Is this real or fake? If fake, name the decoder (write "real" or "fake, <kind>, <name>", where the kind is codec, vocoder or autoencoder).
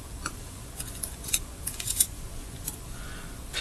fake, vocoder, Vocos